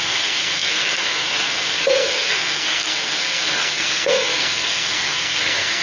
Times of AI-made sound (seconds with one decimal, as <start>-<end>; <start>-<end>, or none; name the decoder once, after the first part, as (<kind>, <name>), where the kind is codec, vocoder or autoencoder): 0.0-5.8 (codec, SNAC)